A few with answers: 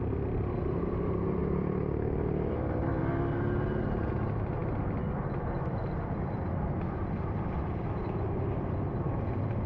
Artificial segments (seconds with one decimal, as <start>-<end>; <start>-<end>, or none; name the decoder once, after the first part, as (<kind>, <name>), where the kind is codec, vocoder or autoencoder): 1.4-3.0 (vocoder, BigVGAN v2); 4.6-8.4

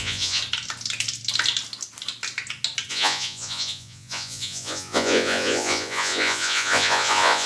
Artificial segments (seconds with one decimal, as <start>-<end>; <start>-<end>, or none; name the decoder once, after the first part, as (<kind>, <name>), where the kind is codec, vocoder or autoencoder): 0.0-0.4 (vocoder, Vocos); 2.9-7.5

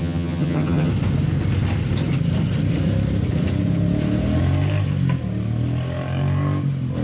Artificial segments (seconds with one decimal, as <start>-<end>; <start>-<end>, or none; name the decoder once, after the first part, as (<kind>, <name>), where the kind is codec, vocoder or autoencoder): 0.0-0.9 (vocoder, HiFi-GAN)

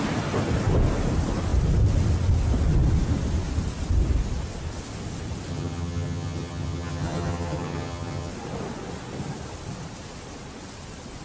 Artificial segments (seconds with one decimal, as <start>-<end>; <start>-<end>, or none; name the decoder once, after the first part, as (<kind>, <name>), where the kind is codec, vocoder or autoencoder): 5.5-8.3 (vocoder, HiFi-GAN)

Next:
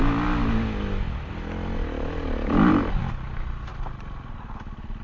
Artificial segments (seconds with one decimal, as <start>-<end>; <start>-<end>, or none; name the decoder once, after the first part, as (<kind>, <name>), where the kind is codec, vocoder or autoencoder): none

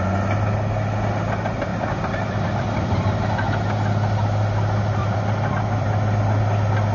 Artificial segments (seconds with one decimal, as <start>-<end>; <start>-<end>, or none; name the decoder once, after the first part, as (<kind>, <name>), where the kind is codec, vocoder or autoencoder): 1.7-3.3 (vocoder, BigVGAN v2); 5.0-6.4